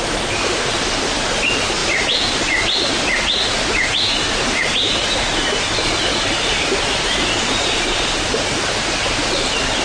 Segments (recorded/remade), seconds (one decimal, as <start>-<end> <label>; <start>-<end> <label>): 0.0-9.8 recorded